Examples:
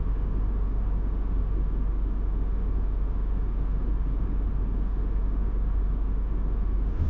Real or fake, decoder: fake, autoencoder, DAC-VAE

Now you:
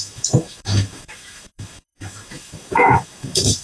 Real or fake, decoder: fake, autoencoder, DAC-VAE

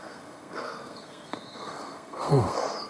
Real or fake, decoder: fake, codec, SNAC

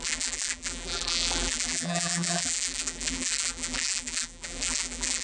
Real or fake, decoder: fake, vocoder, BigVGAN v2